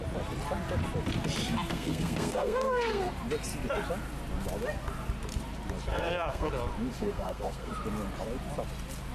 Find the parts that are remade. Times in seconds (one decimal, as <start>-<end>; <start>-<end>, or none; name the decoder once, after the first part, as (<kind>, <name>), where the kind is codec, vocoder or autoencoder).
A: 1.7-3.1 (codec, SNAC); 5.9-6.5; 6.9-7.7